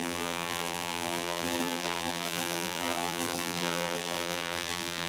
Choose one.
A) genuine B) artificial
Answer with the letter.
B